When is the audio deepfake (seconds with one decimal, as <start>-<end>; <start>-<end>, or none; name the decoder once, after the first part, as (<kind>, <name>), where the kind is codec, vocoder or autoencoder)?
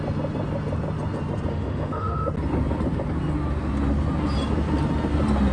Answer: 1.5-2.3 (autoencoder, DAC-VAE)